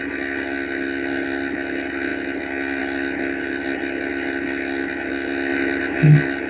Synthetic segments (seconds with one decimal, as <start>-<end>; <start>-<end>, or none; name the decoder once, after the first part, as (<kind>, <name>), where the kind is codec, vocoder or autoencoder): none